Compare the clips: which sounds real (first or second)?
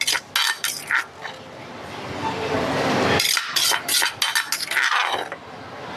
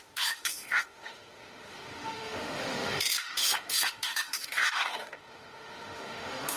first